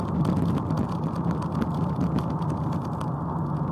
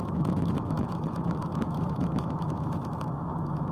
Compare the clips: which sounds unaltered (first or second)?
first